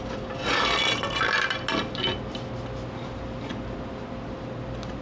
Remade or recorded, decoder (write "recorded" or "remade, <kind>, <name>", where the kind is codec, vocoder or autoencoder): recorded